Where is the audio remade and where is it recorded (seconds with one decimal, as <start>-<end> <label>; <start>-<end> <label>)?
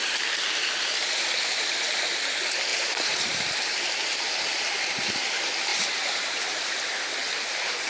0.0-2.7 recorded; 2.7-4.7 remade; 4.7-5.7 recorded; 5.7-6.6 remade; 6.6-7.9 recorded